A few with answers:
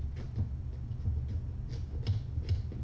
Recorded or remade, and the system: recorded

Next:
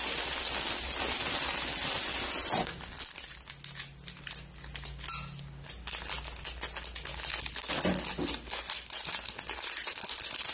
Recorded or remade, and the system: recorded